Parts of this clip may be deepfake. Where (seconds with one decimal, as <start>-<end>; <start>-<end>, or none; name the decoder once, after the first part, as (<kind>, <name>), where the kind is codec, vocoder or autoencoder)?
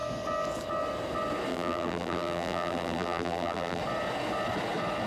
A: 1.5-3.8 (vocoder, BigVGAN v2)